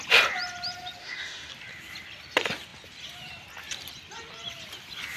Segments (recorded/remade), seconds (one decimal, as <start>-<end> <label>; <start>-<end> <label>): 0.0-1.0 recorded; 1.0-1.5 remade; 1.5-5.2 recorded